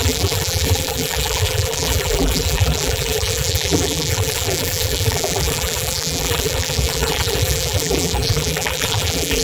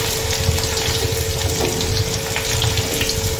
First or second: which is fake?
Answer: first